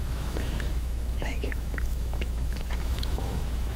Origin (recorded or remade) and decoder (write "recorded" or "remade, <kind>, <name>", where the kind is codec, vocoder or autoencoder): remade, autoencoder, DAC-VAE